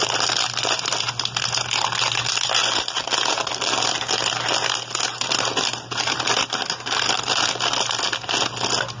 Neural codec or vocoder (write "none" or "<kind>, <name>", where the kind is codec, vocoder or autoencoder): none